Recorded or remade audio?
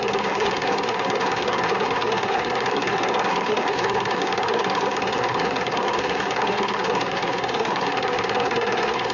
remade